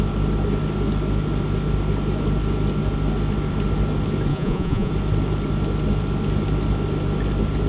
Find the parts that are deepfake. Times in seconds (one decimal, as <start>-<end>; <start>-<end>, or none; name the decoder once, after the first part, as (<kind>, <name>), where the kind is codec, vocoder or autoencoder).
4.3-4.9 (vocoder, Vocos)